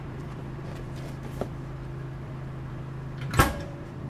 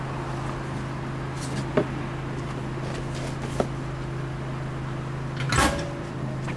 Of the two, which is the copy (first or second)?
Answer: first